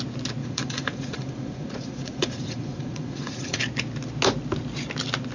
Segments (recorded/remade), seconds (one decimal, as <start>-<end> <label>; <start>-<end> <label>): 0.0-0.4 recorded; 0.4-3.6 remade; 3.6-5.3 recorded